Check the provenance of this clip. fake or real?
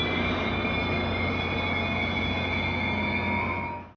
real